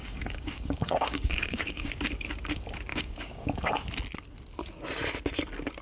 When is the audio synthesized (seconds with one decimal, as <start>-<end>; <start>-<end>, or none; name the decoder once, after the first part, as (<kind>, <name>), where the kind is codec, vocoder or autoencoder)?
0.0-1.9 (codec, DAC); 2.9-3.7